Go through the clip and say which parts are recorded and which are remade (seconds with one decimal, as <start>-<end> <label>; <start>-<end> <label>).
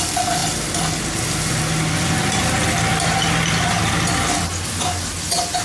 0.0-5.6 recorded